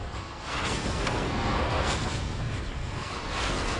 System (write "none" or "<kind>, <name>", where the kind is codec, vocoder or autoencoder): codec, SNAC